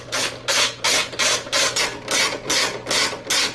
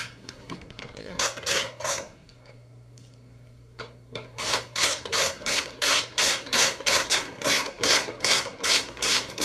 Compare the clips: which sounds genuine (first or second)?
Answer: first